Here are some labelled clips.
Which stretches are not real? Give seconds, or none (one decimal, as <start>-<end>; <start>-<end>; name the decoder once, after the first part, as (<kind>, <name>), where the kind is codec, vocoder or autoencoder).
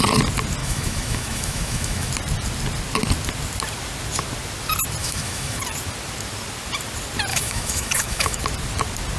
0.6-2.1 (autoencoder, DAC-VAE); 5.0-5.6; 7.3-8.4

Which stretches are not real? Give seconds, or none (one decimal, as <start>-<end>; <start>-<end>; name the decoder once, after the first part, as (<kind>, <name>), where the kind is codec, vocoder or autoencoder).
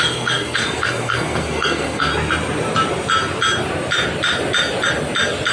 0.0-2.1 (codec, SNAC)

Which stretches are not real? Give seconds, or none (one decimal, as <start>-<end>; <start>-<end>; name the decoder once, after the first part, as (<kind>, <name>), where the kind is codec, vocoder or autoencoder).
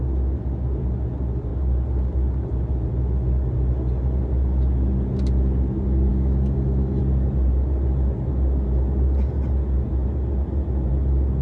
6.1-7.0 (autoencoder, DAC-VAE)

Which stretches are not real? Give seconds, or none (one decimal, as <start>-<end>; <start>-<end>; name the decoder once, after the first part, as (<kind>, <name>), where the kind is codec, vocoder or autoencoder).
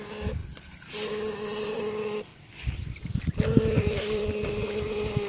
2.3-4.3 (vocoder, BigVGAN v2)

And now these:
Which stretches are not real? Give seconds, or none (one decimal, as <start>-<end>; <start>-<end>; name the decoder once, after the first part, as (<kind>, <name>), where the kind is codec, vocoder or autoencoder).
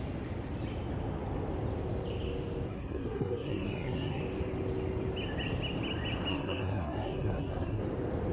2.7-4.2 (codec, SNAC); 6.3-7.8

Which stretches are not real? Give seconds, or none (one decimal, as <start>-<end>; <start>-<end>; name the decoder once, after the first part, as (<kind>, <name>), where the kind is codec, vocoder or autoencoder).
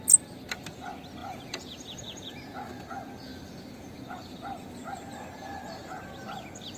1.2-2.3 (vocoder, Vocos)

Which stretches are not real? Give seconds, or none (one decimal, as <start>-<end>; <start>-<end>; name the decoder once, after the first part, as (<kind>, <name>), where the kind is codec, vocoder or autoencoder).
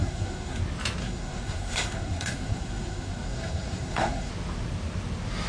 0.0-0.6 (codec, SNAC); 1.0-4.3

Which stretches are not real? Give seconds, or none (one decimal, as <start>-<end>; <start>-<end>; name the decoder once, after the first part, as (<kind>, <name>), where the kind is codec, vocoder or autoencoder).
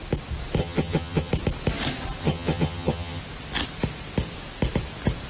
0.6-1.3 (vocoder, HiFi-GAN); 2.2-3.2